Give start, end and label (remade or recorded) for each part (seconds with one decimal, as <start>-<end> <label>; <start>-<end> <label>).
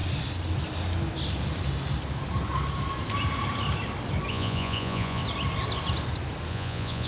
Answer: 0.0-4.3 recorded; 4.3-5.2 remade; 5.2-6.5 recorded; 6.5-7.1 remade